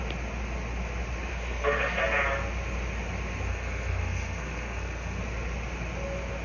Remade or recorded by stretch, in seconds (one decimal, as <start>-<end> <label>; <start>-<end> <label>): 0.0-1.3 recorded; 1.3-2.0 remade; 2.0-3.5 recorded; 3.5-5.2 remade; 5.2-6.4 recorded